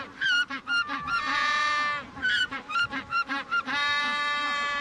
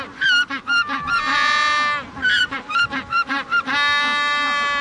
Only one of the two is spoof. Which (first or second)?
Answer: first